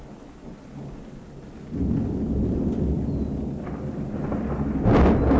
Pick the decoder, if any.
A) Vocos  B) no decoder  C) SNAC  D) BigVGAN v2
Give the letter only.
B